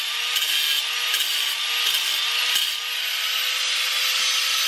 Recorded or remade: recorded